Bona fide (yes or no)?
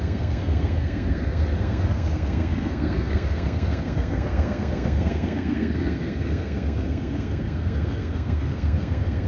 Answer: no